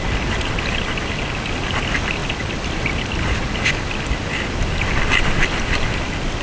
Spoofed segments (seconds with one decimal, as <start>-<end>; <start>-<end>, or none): none